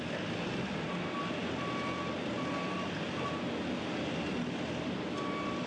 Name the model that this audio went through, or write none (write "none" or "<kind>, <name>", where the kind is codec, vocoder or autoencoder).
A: none